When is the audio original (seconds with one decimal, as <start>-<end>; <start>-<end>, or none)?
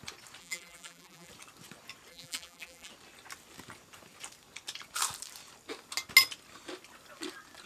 0.0-0.4; 1.3-2.1; 2.9-7.7